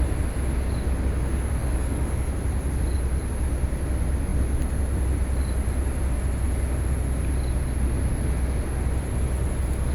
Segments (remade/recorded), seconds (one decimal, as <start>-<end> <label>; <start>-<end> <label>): 0.0-1.6 recorded; 1.6-2.3 remade; 2.3-9.9 recorded